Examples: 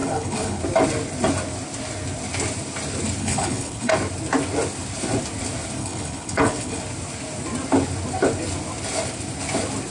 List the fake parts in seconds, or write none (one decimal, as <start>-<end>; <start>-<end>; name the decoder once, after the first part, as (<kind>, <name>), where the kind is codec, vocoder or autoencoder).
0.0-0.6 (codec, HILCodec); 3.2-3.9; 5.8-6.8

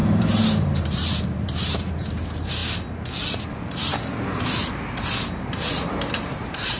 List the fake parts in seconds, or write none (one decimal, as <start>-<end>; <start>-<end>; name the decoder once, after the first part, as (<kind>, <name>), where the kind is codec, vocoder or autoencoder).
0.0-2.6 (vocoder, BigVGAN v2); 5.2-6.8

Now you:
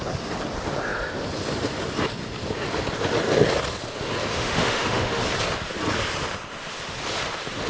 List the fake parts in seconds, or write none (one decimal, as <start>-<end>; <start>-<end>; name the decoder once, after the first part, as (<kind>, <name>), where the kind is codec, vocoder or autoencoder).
4.3-5.2 (autoencoder, DAC-VAE)

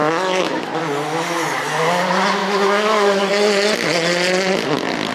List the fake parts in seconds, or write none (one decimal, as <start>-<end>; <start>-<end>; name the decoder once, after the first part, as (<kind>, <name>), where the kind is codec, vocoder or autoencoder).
0.0-0.8 (autoencoder, DAC-VAE); 2.4-3.3

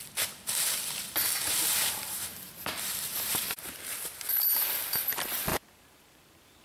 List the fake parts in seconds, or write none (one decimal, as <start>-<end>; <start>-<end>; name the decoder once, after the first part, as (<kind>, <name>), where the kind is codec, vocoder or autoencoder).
1.6-5.1 (vocoder, BigVGAN v2); 5.5-6.6

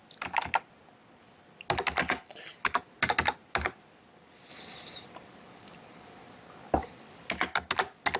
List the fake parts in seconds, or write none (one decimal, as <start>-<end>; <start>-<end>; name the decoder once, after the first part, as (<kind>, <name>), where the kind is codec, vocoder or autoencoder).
4.5-7.3 (vocoder, BigVGAN v2)

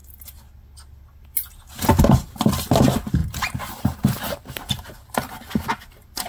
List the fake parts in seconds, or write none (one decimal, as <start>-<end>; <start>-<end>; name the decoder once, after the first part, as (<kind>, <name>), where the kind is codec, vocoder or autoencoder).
3.2-4.7 (vocoder, BigVGAN v2)